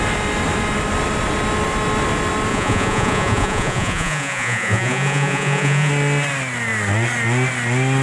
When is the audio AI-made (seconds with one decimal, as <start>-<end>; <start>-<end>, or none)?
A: 2.5-5.9